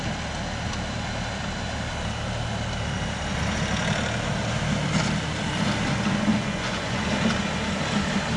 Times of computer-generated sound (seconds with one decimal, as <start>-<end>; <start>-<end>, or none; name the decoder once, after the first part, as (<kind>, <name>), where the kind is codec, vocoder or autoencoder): 6.3-7.0 (vocoder, Vocos)